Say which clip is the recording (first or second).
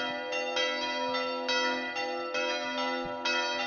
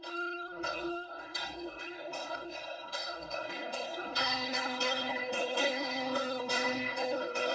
first